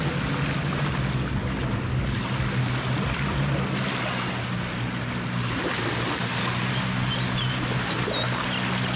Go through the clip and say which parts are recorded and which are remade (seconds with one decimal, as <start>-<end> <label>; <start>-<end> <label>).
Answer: 0.0-9.0 recorded